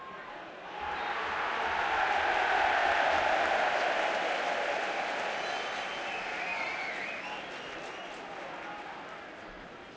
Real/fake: real